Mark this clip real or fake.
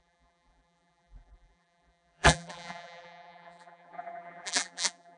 fake